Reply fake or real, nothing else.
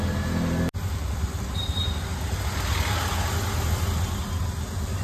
real